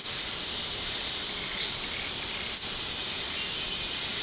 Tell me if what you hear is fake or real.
real